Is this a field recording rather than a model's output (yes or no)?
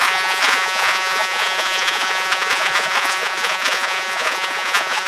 no